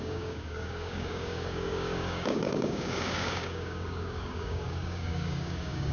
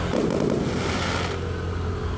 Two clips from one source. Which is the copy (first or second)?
first